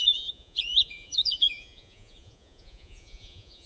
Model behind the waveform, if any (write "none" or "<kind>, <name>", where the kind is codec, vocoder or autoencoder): vocoder, Vocos